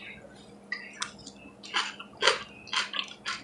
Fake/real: real